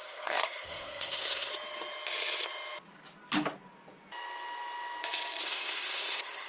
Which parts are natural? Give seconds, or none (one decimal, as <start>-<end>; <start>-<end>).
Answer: 1.5-5.4

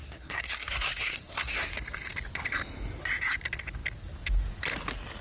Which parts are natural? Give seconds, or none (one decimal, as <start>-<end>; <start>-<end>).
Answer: 1.7-5.2